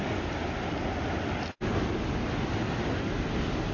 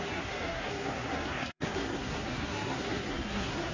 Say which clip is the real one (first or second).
first